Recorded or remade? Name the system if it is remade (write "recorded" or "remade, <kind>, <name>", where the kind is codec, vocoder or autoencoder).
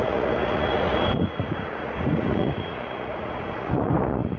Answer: remade, vocoder, Vocos